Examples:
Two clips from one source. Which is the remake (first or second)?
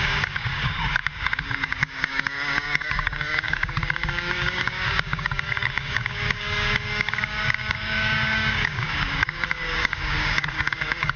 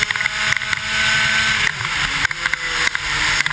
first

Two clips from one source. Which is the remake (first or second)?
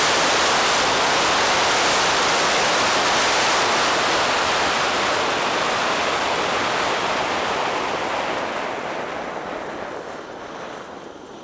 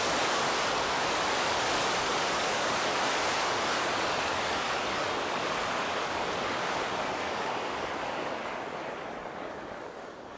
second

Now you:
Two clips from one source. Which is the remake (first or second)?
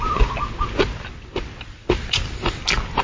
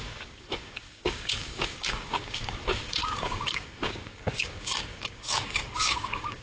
second